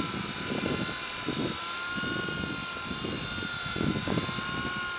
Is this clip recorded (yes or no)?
yes